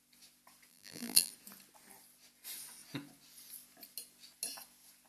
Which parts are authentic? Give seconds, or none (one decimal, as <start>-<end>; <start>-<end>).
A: 0.0-0.7; 1.3-5.1